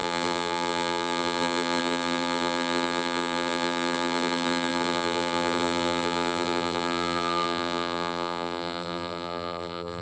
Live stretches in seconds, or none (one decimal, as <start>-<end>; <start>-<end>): none